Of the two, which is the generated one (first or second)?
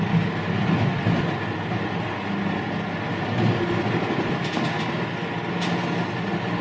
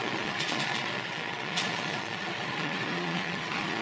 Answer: second